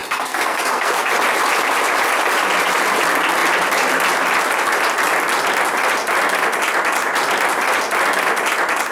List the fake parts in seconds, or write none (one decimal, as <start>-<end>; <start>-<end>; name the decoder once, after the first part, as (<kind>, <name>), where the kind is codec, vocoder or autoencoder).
0.0-1.1 (codec, SNAC)